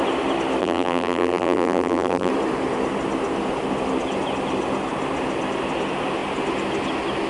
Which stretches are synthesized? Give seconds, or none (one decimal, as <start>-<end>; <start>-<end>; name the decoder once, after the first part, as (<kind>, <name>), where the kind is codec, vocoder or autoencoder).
0.6-2.3 (vocoder, BigVGAN v2)